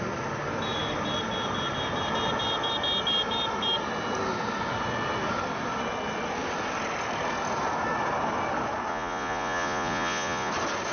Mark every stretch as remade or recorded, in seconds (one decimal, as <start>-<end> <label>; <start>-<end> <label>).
0.0-8.9 recorded; 8.9-10.5 remade; 10.5-10.9 recorded